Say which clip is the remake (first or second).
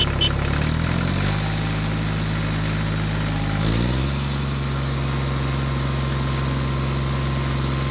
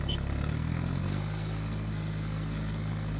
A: second